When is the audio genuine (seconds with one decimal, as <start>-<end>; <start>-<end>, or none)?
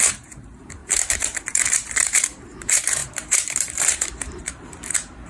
none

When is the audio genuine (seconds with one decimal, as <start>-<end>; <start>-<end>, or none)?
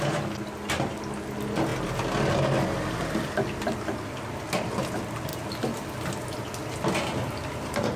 0.0-8.0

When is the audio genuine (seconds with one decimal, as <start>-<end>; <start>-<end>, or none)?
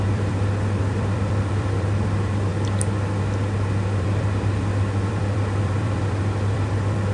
2.5-4.0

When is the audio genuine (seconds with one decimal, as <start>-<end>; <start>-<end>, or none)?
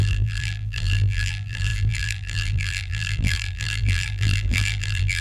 none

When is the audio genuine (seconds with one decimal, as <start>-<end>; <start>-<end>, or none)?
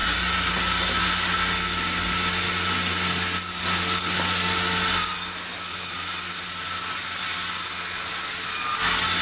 0.0-9.2